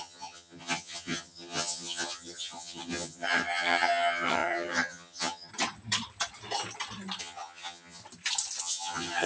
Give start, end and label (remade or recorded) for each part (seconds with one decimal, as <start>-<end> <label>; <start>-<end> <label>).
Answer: 0.0-5.5 remade; 5.5-7.2 recorded; 7.2-8.0 remade; 8.0-8.6 recorded; 8.6-9.3 remade